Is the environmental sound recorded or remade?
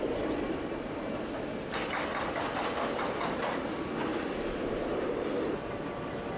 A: recorded